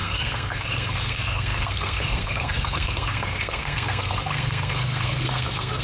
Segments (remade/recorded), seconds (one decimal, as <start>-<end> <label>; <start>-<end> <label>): 0.0-5.8 remade